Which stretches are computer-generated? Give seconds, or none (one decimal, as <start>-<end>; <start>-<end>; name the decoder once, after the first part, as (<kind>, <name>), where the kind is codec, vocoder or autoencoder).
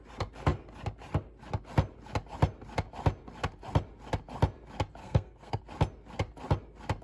5.0-5.6 (codec, SNAC)